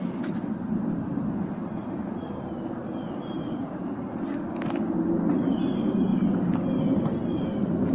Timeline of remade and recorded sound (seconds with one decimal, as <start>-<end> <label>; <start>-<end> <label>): 0.0-1.1 recorded; 1.1-4.2 remade; 4.2-7.9 recorded